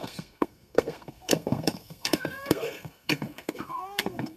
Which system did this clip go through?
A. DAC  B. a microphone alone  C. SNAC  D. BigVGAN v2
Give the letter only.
C